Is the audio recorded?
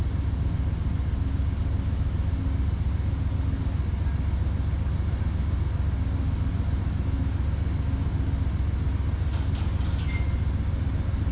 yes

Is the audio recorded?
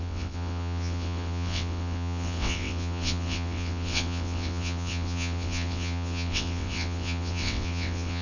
no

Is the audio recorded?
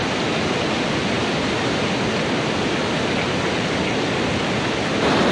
yes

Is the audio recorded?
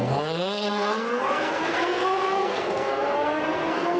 no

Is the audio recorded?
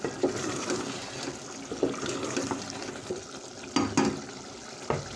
yes